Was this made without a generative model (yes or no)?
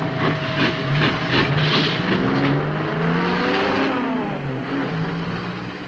yes